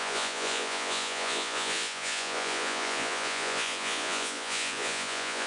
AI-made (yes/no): yes